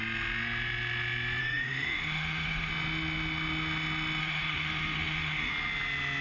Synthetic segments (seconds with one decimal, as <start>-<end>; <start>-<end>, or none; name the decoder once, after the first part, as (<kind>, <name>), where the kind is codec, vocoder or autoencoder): 1.4-2.7 (autoencoder, DAC-VAE); 4.2-5.5